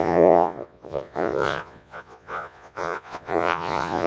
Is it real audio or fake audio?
fake